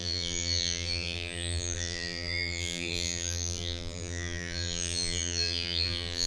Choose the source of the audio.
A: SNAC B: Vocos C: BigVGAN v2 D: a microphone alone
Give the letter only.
C